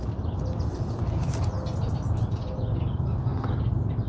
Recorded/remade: recorded